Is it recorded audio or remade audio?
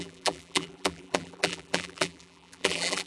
remade